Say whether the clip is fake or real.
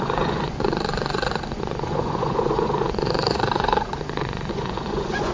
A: fake